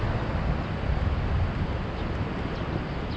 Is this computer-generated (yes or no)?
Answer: no